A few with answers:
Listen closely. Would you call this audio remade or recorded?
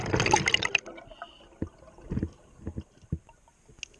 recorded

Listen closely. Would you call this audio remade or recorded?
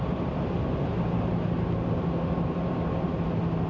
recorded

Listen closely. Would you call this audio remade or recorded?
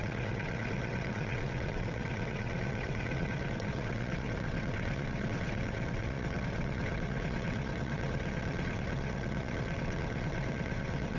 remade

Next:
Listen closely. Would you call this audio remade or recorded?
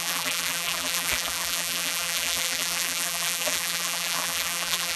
remade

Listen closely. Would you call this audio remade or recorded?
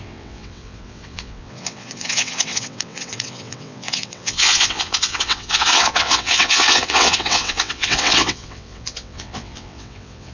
remade